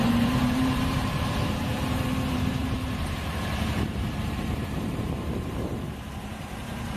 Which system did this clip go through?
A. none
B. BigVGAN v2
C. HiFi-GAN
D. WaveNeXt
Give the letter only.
B